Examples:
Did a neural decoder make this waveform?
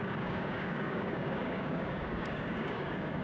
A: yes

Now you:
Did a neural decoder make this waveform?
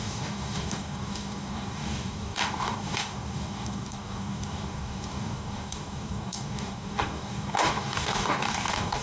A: yes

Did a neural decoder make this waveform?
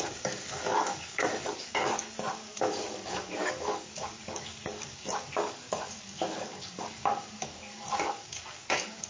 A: yes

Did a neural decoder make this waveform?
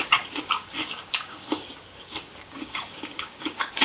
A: yes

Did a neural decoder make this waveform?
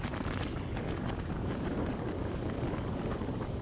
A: yes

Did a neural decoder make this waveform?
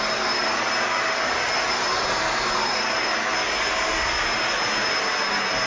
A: no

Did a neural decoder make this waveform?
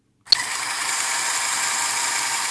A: no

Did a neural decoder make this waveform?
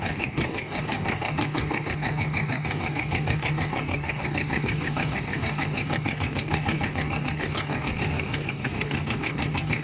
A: yes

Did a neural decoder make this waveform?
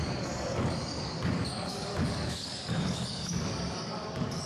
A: yes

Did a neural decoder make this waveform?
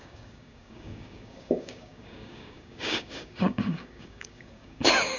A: yes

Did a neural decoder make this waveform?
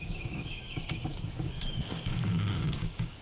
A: yes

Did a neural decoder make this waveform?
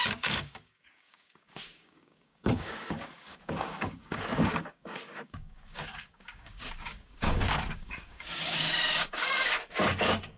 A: yes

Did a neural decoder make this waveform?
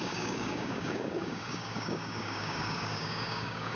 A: yes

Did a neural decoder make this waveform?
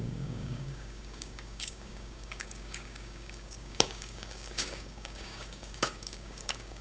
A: yes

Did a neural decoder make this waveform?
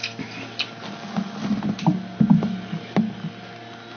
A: no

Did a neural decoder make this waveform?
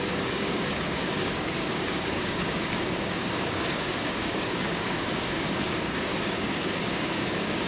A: yes